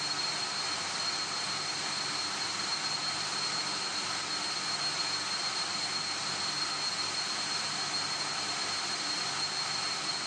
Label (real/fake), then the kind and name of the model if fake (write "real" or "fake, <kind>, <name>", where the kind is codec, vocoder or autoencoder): real